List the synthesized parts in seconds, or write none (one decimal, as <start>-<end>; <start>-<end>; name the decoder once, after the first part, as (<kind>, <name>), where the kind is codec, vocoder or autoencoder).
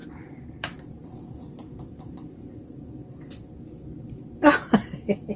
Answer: 0.0-1.2 (vocoder, BigVGAN v2); 1.9-3.3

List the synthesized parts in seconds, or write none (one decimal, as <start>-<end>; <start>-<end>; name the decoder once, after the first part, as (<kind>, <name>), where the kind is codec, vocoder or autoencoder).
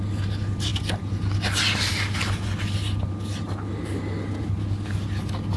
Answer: none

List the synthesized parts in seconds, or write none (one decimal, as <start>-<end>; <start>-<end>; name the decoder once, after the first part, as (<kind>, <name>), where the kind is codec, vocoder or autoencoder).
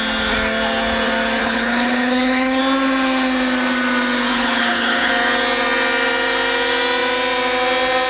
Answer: 1.4-2.6 (codec, HILCodec); 4.3-5.1